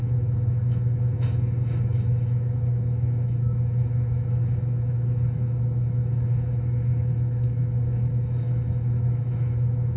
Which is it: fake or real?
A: fake